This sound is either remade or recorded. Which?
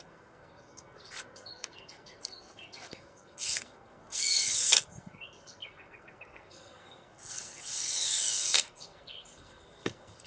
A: remade